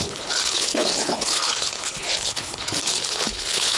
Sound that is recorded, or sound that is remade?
remade